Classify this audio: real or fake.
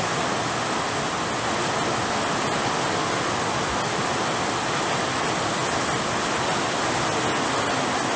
real